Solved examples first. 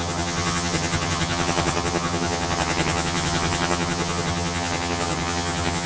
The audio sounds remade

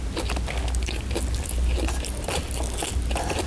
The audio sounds recorded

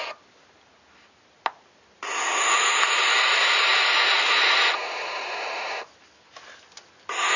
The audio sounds recorded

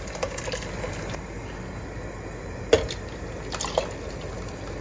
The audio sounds recorded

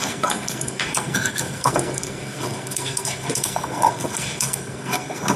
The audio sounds remade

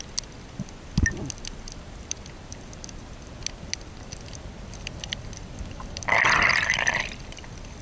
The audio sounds recorded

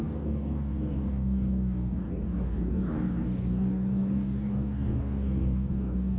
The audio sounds remade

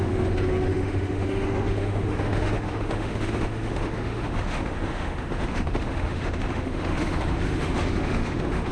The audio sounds remade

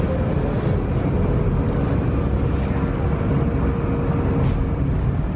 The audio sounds recorded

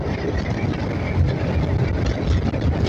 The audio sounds recorded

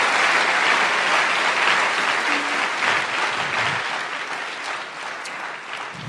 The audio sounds recorded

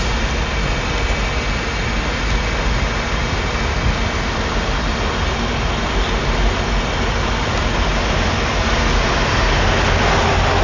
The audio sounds recorded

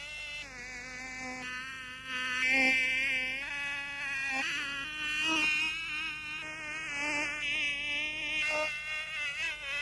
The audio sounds recorded